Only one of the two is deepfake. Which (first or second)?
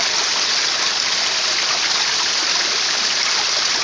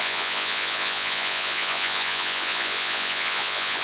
second